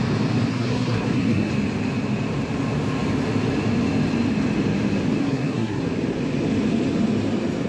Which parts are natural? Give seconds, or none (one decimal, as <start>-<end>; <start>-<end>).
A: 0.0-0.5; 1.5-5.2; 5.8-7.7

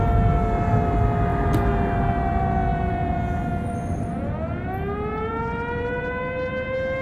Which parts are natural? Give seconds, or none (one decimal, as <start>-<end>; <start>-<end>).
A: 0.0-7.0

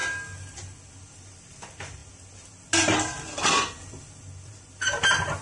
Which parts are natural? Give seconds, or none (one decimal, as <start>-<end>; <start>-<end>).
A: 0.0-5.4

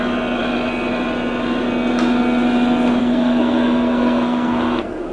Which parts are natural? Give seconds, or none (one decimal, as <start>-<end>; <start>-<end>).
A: 0.0-3.0

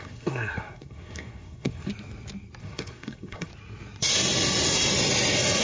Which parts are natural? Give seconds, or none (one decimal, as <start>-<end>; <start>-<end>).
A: 1.9-2.6; 3.5-5.6

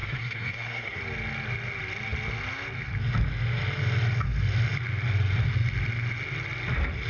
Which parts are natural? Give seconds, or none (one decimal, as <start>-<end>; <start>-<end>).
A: 1.0-7.1

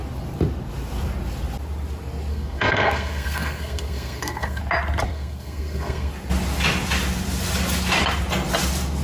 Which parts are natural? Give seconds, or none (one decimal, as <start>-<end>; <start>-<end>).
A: 0.0-2.3; 4.6-5.1; 6.1-9.0

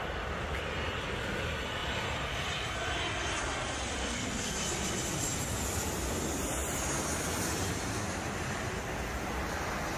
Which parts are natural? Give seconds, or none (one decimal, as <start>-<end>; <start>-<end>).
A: 0.0-4.0; 4.5-10.0